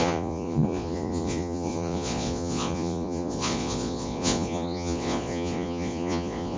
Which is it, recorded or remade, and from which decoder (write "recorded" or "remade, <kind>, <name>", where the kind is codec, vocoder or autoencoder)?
remade, vocoder, Vocos